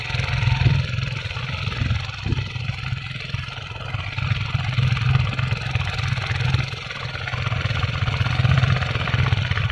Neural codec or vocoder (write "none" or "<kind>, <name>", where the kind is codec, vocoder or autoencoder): vocoder, BigVGAN v2